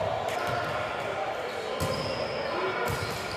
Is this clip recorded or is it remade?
recorded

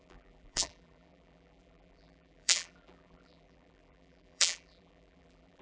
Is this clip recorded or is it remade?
remade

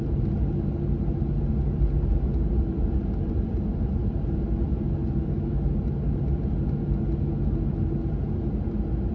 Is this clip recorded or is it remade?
recorded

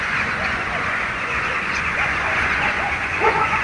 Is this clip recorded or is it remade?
remade